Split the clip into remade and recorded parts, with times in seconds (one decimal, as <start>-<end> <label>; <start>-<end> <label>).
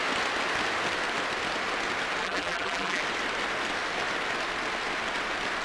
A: 0.0-2.2 recorded; 2.2-3.0 remade; 3.0-5.6 recorded